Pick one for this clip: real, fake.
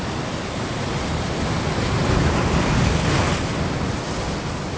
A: real